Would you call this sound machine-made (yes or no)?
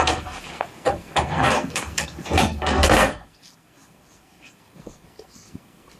yes